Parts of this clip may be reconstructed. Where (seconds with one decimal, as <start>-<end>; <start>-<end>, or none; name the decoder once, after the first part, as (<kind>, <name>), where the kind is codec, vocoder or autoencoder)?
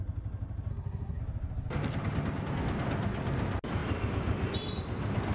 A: 0.7-1.2 (codec, SNAC)